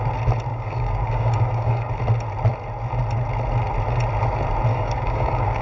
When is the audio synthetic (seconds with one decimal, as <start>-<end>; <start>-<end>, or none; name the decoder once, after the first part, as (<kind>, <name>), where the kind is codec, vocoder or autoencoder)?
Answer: 0.5-1.9 (codec, DAC); 4.7-5.6